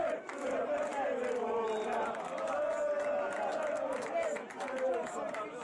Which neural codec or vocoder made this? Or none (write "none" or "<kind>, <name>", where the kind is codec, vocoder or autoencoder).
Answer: none